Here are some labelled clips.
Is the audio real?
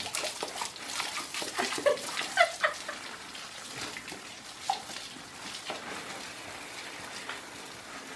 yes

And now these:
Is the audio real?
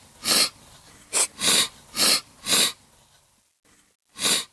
yes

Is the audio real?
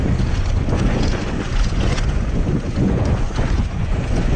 no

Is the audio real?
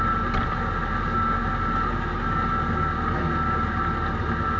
yes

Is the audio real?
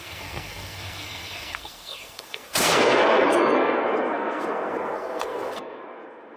no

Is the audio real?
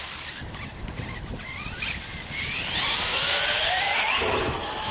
yes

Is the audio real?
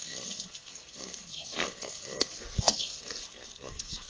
no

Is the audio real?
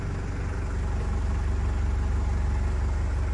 yes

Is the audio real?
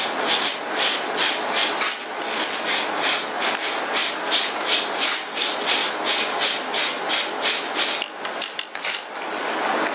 yes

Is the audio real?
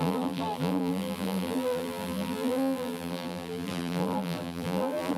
no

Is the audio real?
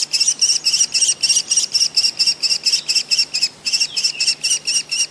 yes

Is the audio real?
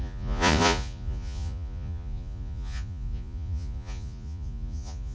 no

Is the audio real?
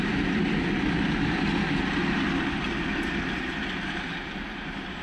yes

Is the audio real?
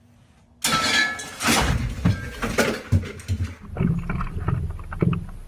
yes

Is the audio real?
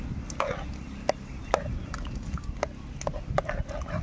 yes